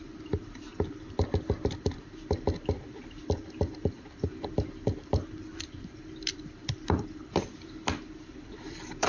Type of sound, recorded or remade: remade